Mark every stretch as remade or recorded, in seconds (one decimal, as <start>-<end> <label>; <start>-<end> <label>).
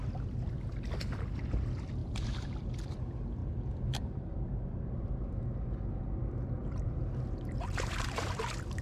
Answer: 0.0-2.0 recorded; 2.0-2.5 remade; 2.5-3.4 recorded; 3.4-5.1 remade; 5.1-6.6 recorded; 6.6-8.4 remade; 8.4-8.8 recorded